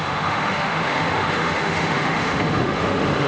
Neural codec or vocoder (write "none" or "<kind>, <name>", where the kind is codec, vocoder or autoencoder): autoencoder, DAC-VAE